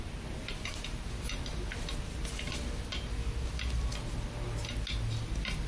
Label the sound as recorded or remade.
recorded